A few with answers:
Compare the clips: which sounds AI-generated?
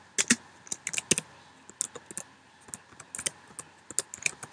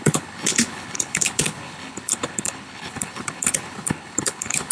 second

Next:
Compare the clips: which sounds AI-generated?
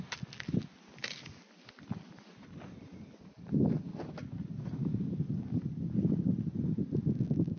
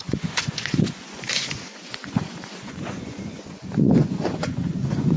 second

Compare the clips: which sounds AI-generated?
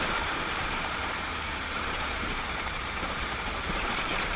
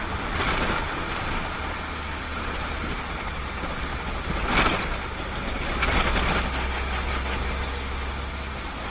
first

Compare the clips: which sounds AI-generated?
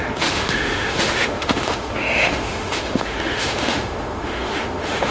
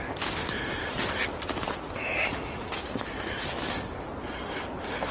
first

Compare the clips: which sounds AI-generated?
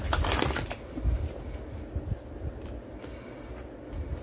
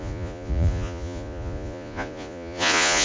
second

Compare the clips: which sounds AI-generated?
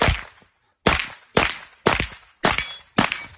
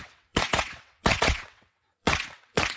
second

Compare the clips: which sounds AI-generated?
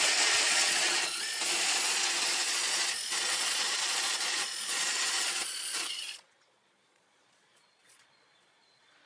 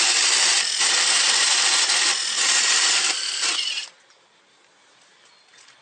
first